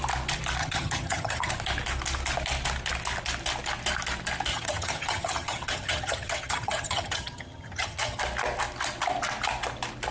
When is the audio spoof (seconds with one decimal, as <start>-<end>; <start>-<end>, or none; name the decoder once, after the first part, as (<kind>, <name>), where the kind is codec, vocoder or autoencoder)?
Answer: 0.6-1.5 (vocoder, HiFi-GAN); 4.5-8.2